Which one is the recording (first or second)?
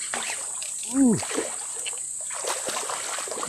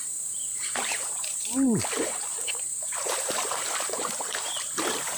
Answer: first